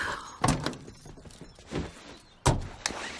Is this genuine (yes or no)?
yes